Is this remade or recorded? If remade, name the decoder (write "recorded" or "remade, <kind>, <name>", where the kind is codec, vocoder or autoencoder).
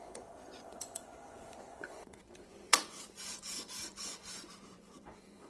remade, vocoder, Vocos